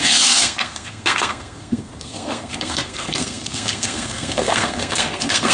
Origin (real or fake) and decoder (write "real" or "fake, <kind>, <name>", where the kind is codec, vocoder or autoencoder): fake, codec, SNAC